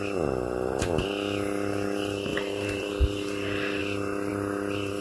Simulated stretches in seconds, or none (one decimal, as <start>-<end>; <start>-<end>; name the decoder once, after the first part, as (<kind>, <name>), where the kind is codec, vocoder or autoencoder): 2.3-2.9 (vocoder, BigVGAN v2)